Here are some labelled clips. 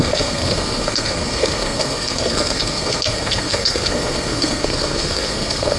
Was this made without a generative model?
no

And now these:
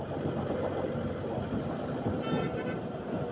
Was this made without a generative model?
yes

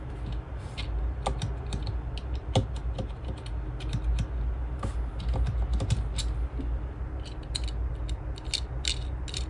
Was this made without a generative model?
yes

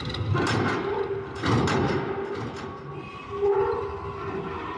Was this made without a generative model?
yes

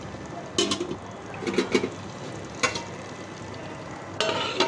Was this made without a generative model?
yes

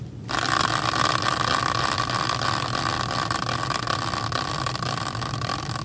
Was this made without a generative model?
yes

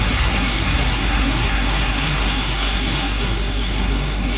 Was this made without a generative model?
no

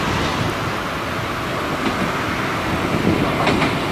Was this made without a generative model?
yes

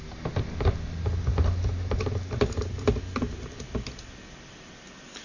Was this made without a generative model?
yes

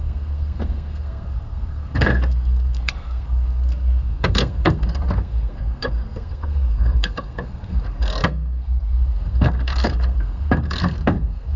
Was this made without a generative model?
no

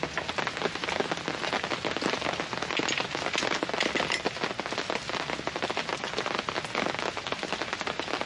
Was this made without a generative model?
yes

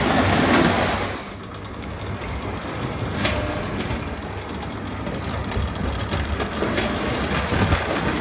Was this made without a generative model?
yes